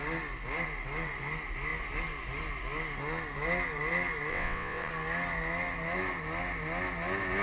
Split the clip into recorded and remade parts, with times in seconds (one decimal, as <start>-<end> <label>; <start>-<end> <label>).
0.0-4.3 recorded; 4.3-4.9 remade; 4.9-7.4 recorded